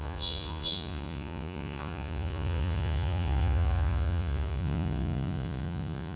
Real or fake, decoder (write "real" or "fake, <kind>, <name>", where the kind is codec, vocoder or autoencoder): fake, vocoder, Vocos